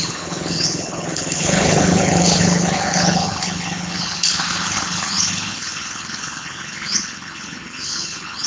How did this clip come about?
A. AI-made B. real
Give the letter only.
A